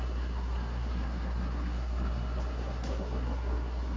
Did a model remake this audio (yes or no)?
yes